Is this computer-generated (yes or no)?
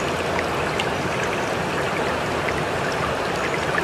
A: no